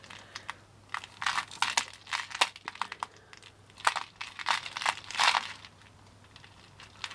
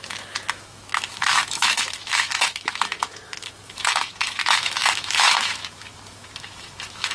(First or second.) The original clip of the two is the first